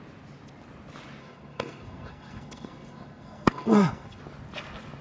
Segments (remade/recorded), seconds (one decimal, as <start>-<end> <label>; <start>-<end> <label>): 0.0-1.2 recorded; 1.2-4.2 remade; 4.2-5.0 recorded